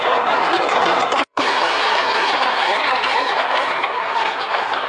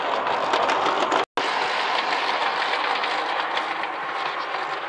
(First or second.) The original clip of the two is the second